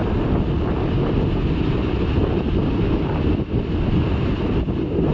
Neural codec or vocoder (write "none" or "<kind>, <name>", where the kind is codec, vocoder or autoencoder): none